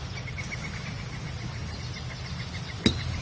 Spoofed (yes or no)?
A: no